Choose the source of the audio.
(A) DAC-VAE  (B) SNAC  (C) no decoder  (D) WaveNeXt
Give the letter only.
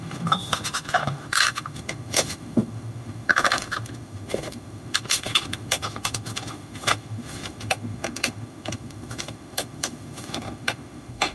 A